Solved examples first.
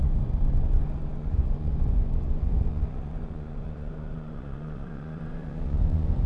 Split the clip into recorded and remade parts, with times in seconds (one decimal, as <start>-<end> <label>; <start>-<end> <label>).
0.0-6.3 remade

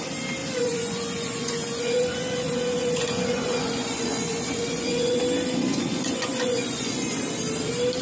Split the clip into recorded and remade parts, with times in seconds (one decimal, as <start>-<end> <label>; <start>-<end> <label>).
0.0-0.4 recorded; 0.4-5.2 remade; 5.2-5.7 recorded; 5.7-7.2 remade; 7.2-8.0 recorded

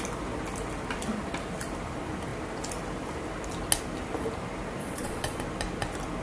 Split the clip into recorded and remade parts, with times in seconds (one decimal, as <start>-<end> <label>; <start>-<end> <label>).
0.0-4.8 recorded; 4.8-5.4 remade; 5.4-6.2 recorded

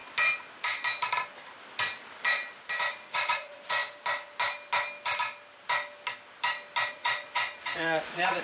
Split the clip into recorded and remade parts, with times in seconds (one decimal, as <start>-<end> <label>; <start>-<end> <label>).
0.0-2.9 recorded; 2.9-3.8 remade; 3.8-6.9 recorded; 6.9-8.4 remade